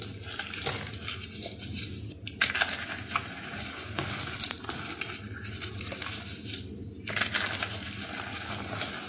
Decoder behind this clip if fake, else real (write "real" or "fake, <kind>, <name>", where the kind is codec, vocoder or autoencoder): real